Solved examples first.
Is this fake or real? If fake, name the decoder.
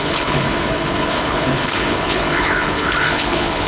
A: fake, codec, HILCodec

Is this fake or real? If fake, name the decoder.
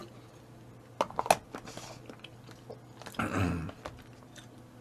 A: real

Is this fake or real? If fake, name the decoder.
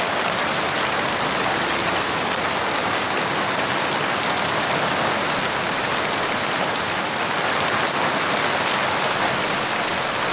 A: real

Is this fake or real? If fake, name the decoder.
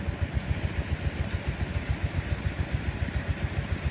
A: real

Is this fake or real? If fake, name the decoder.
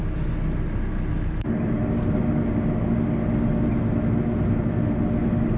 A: real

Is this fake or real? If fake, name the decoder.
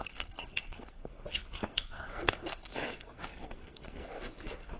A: fake, codec, SNAC